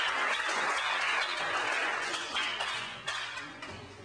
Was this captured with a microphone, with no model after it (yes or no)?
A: no